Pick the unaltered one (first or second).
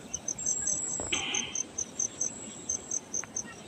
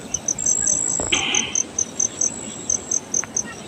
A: second